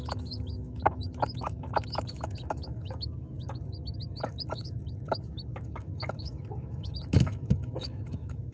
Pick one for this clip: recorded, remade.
remade